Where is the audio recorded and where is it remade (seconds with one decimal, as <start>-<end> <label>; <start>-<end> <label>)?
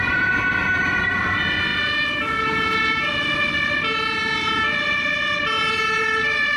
0.0-6.6 remade